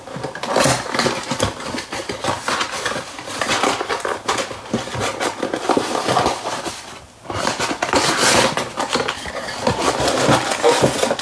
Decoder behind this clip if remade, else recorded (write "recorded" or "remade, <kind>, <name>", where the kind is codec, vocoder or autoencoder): recorded